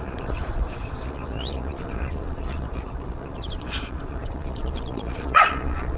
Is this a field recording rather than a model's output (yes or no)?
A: no